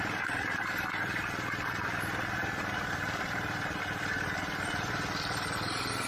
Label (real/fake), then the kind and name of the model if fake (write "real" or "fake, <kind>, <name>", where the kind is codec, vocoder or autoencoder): real